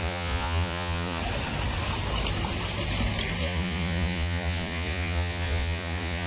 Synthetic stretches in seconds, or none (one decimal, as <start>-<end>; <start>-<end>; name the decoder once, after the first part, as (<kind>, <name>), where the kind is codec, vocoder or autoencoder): 0.0-1.2 (vocoder, Vocos); 3.4-6.3